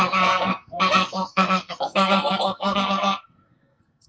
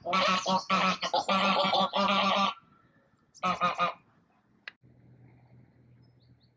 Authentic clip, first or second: second